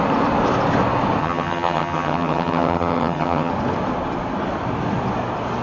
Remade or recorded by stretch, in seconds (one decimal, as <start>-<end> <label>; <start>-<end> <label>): 0.0-1.2 recorded; 1.2-3.5 remade; 3.5-5.6 recorded